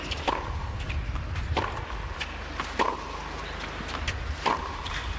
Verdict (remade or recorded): recorded